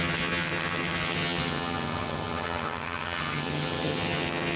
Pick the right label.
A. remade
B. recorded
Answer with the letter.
A